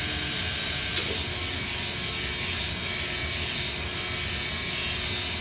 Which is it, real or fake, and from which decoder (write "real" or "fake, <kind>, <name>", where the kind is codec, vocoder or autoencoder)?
real